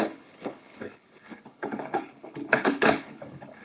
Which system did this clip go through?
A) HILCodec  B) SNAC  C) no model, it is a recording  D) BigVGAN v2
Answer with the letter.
A